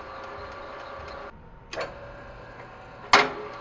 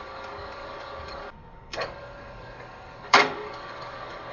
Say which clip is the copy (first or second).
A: second